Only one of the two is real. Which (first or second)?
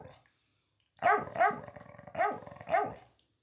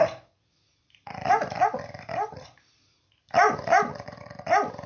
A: first